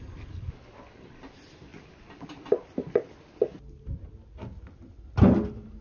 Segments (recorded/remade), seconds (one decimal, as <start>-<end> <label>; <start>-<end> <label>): 0.0-5.8 recorded